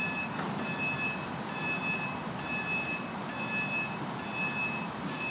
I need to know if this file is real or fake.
real